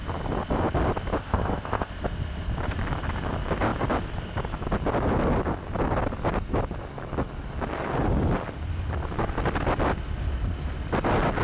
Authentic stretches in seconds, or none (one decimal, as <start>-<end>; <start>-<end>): 0.0-1.2; 1.9-11.4

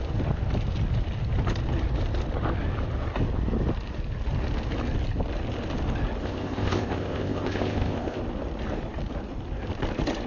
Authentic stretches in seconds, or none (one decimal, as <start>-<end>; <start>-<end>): 0.0-6.2; 8.2-10.3

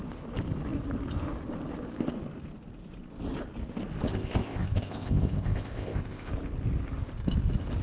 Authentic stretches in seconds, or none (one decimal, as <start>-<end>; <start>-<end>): 0.0-4.1; 6.3-7.8

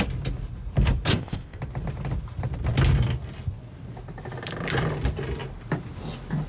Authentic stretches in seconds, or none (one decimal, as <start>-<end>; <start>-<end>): 0.0-1.1; 1.6-6.5